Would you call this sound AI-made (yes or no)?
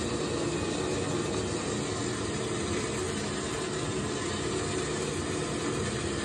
no